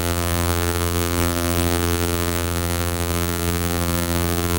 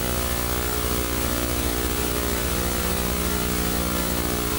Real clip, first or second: second